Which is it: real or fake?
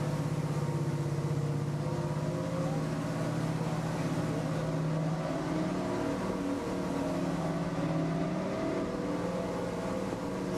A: real